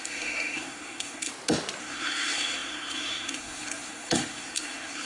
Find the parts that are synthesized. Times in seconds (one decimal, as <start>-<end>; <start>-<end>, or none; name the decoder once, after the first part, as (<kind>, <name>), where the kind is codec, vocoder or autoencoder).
0.0-1.3 (codec, SNAC); 1.8-5.1